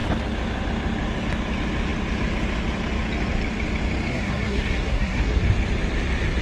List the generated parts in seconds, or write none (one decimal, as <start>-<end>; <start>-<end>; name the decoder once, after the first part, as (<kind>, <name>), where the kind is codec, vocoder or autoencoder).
4.1-5.4 (codec, SNAC)